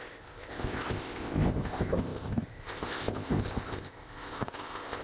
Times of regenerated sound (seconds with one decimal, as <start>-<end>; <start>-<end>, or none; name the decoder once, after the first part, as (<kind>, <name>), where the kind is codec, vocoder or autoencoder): 0.0-5.0 (codec, ZipCodec)